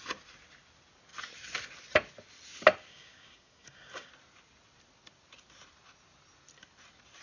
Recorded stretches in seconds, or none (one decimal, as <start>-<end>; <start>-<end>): 0.0-2.9; 4.1-7.2